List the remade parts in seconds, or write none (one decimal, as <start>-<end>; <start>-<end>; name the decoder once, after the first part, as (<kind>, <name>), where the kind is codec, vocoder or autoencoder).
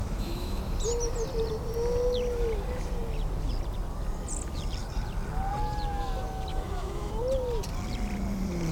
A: 0.0-0.6 (autoencoder, DAC-VAE); 6.5-7.1